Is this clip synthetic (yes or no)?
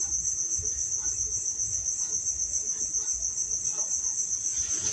no